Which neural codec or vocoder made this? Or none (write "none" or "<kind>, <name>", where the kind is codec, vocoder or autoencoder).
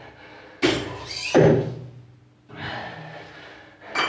none